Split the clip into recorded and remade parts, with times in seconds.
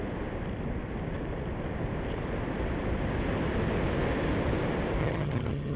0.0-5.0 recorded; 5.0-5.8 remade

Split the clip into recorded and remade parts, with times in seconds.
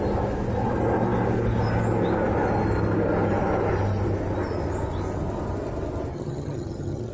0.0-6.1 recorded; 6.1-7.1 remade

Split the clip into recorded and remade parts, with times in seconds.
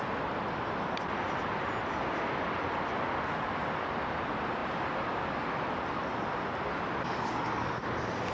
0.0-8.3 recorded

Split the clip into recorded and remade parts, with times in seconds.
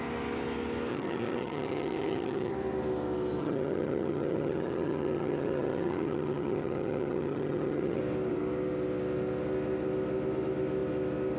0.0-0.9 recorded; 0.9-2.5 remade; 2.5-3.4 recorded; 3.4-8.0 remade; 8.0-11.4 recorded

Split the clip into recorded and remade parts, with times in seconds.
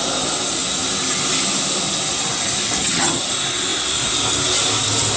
0.0-2.8 recorded; 2.8-3.3 remade; 3.3-5.2 recorded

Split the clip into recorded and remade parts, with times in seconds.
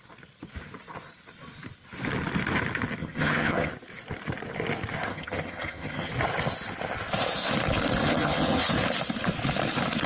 0.0-3.0 recorded; 3.0-3.7 remade; 3.7-5.1 recorded; 5.1-6.1 remade; 6.1-8.0 recorded; 8.0-8.7 remade; 8.7-10.1 recorded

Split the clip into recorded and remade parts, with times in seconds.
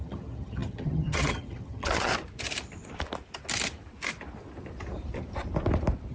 0.0-2.1 remade; 2.1-6.1 recorded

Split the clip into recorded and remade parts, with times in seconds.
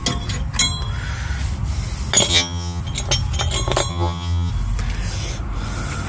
0.0-2.3 recorded; 2.3-2.8 remade; 2.8-3.9 recorded; 3.9-4.5 remade; 4.5-6.1 recorded